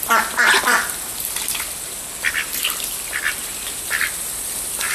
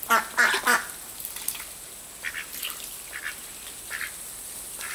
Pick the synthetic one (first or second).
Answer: first